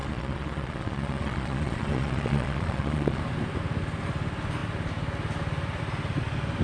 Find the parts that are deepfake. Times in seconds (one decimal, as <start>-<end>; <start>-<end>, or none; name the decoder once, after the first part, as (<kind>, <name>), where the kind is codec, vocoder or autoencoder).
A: 0.0-3.2 (vocoder, Vocos)